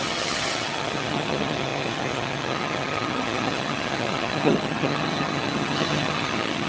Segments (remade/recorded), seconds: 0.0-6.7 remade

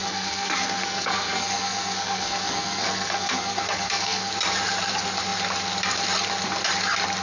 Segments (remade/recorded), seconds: 0.0-4.3 remade; 4.3-7.2 recorded

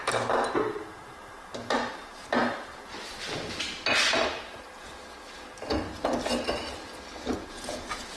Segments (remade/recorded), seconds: 0.0-7.3 recorded; 7.3-8.2 remade

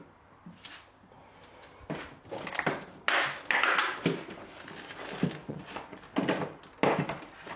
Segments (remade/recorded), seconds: 0.0-5.4 recorded; 5.4-6.0 remade; 6.0-7.6 recorded